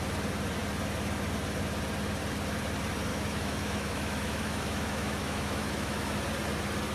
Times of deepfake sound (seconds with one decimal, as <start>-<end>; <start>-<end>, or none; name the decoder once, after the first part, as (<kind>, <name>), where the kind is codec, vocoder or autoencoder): 3.1-6.2 (autoencoder, DAC-VAE)